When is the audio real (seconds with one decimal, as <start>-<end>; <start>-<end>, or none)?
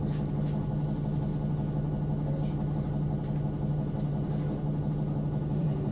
0.0-5.9